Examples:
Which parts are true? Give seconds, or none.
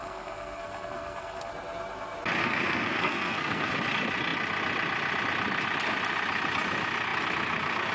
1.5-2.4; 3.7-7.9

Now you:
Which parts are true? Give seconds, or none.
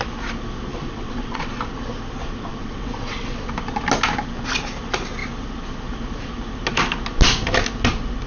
0.0-0.7; 1.5-2.5; 3.5-8.3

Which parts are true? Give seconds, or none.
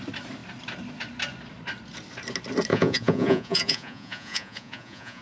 0.0-2.7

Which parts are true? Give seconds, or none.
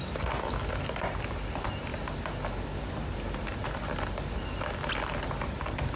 0.0-6.0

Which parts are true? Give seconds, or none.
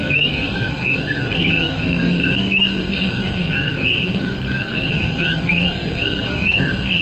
none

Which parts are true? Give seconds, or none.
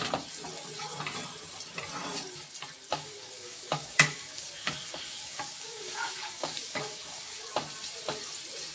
0.0-2.9; 7.5-8.7